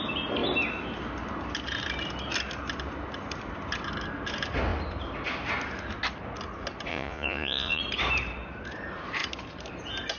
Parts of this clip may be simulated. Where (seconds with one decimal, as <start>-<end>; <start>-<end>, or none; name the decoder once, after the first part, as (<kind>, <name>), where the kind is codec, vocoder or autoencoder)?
6.9-7.8 (vocoder, Vocos)